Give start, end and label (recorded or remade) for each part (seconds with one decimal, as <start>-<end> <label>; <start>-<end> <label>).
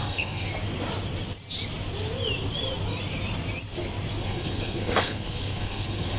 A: 0.0-0.5 remade; 0.5-4.2 recorded; 4.2-6.2 remade